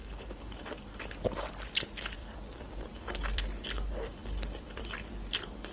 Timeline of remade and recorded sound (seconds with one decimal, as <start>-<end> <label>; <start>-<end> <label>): 0.0-0.6 remade; 0.6-2.2 recorded; 2.2-4.8 remade; 4.8-5.7 recorded